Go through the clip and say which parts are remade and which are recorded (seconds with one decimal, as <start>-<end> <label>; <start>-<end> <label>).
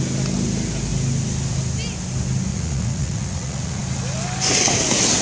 0.0-2.5 recorded; 2.5-3.8 remade; 3.8-5.2 recorded